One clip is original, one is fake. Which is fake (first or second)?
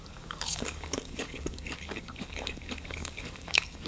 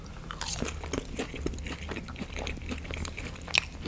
first